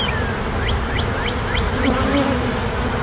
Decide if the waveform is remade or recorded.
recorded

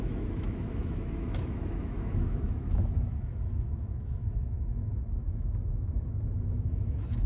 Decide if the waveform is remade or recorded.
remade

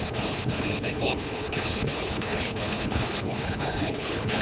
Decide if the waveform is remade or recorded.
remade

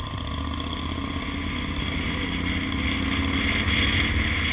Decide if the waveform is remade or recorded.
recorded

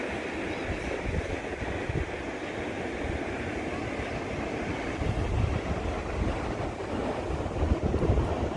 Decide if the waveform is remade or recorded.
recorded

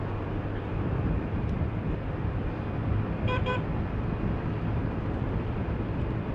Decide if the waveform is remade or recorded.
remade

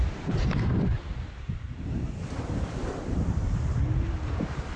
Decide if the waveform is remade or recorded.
recorded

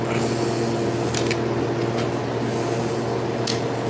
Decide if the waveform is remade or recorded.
recorded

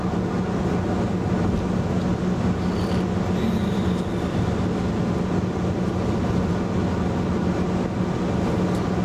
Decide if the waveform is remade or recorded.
recorded